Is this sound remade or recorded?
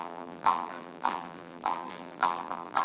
remade